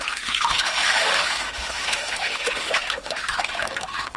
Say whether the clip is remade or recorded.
remade